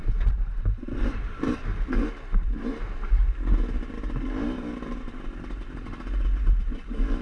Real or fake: fake